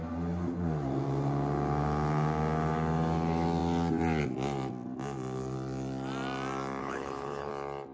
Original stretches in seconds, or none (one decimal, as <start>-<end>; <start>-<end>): 0.0-6.8; 7.5-7.9